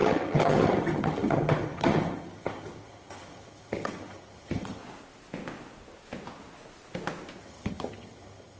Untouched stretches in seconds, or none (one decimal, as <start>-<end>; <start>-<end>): 4.8-7.4

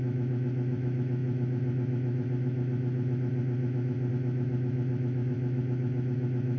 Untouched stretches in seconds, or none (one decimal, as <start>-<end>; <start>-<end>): none

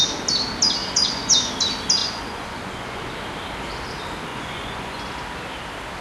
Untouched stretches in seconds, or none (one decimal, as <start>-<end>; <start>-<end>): 0.0-0.8; 1.5-2.0; 3.1-4.3; 5.1-6.0